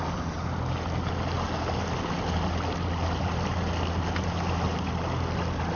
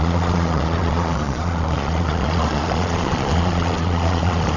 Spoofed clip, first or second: second